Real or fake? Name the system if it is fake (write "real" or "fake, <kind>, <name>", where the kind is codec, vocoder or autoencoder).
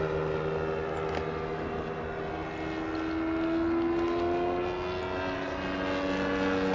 real